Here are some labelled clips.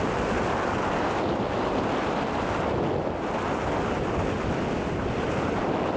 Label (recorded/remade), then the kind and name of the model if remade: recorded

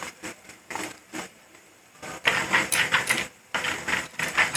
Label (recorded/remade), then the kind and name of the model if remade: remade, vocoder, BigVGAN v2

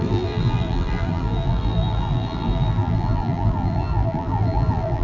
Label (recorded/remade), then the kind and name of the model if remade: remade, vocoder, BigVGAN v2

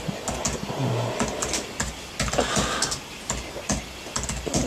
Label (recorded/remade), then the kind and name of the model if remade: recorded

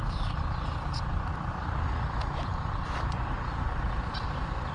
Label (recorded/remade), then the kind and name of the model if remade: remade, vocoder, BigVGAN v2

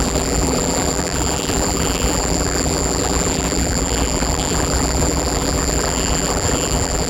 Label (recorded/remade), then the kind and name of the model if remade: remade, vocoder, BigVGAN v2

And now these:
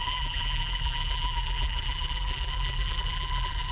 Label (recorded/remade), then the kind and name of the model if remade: remade, vocoder, BigVGAN v2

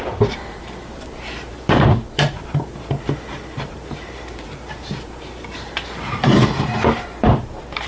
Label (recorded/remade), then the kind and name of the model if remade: remade, vocoder, BigVGAN v2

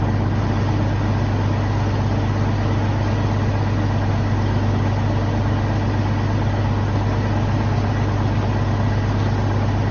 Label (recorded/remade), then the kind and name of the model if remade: recorded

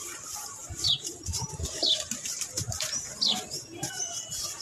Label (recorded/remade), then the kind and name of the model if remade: remade, vocoder, BigVGAN v2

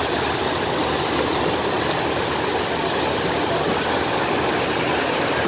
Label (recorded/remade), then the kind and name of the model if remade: recorded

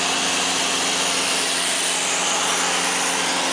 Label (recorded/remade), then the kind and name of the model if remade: recorded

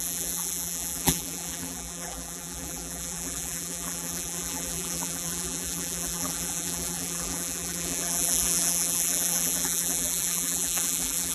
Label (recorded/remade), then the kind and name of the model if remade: remade, vocoder, BigVGAN v2